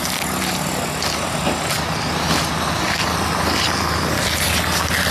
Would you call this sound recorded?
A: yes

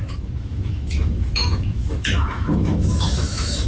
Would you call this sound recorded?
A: no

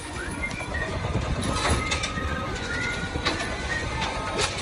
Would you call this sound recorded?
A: no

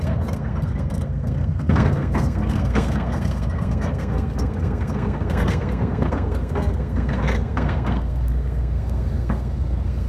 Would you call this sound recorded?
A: no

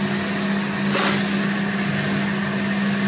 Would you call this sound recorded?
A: yes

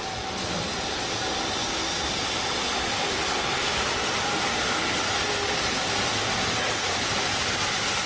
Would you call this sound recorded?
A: yes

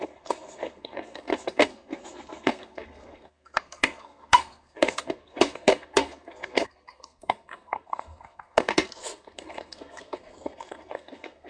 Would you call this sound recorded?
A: no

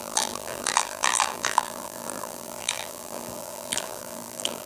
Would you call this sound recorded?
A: no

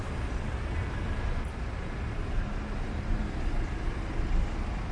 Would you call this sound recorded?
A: yes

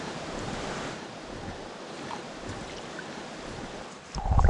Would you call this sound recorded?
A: no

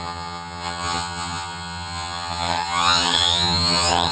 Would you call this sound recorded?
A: no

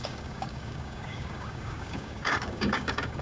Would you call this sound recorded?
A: no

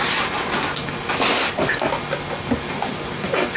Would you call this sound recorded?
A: yes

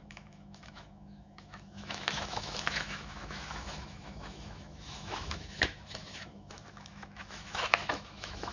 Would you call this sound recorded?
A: no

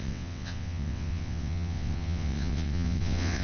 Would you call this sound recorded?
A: no